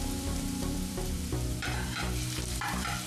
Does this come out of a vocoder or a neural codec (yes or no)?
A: yes